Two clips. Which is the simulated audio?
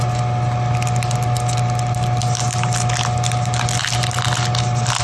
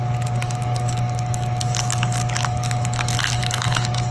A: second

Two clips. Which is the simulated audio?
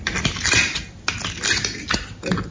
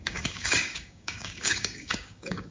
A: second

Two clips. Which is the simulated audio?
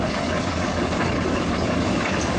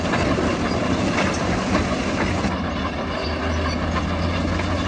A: first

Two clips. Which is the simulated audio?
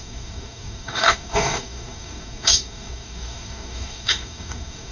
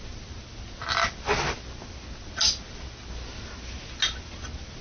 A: first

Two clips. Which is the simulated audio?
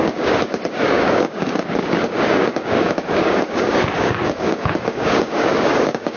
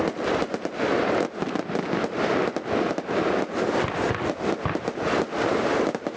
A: first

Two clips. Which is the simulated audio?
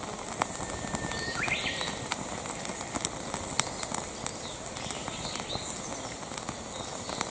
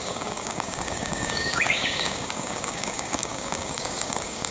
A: second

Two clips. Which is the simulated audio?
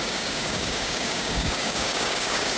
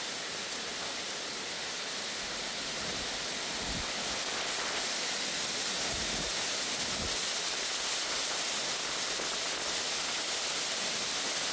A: first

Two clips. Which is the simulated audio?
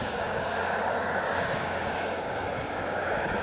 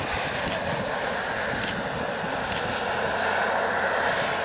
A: first